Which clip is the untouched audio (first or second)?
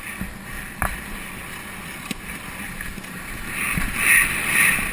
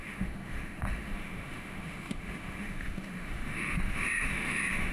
first